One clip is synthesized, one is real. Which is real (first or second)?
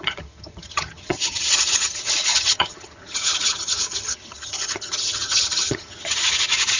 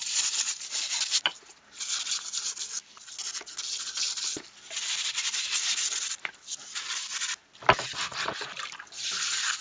second